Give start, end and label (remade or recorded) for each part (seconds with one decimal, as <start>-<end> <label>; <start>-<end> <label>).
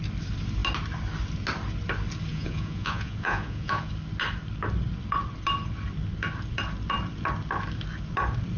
0.0-2.3 recorded; 2.3-3.9 remade; 3.9-8.6 recorded